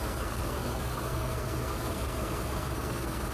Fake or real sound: fake